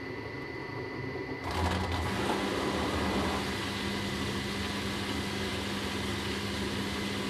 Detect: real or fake real